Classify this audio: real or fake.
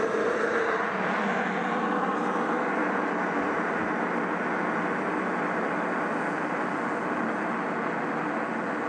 real